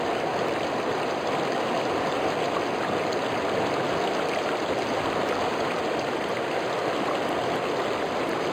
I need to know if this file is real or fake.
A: real